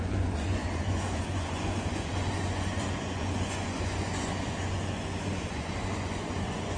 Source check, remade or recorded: remade